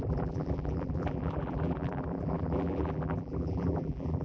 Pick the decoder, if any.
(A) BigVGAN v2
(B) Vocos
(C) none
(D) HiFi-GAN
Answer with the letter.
A